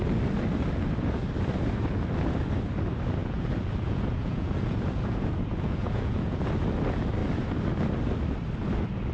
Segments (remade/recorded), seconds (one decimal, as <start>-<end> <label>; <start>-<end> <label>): 0.0-3.2 recorded; 3.2-6.5 remade; 6.5-9.1 recorded